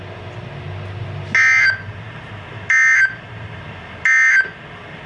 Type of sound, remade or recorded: recorded